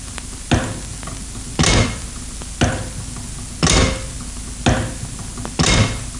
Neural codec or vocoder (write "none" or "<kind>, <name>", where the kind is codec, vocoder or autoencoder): none